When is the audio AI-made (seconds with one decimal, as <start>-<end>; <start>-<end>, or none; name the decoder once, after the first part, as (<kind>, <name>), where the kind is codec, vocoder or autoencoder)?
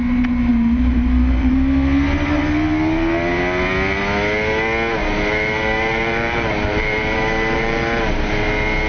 0.5-1.5 (vocoder, BigVGAN v2); 5.0-8.5